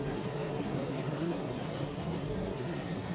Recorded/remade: remade